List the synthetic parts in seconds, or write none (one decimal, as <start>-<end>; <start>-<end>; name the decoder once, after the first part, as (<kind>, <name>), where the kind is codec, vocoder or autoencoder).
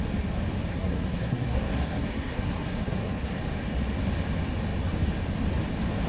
0.7-3.4 (codec, SNAC)